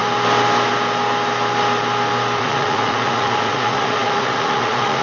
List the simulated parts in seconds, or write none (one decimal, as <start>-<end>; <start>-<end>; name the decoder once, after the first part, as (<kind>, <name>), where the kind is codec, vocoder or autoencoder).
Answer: 2.4-5.0 (vocoder, Vocos)